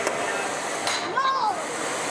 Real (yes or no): yes